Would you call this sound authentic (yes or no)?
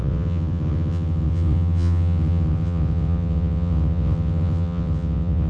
no